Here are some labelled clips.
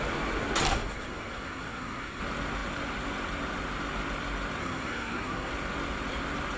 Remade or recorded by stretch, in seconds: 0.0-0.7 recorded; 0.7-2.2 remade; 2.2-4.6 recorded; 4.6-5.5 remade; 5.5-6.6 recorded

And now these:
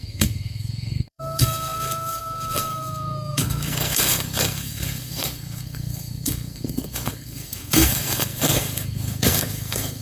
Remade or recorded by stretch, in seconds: 0.0-10.0 remade